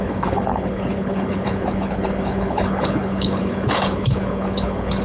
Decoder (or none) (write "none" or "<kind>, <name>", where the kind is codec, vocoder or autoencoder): codec, HILCodec